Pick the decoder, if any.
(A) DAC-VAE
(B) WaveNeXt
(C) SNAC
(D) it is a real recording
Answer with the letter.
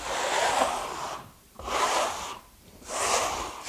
D